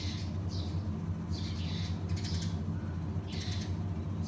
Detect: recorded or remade recorded